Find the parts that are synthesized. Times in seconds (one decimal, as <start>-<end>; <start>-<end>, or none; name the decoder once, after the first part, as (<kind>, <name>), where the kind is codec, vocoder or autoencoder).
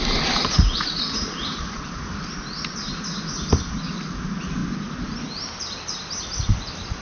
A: 0.4-1.8 (vocoder, Vocos)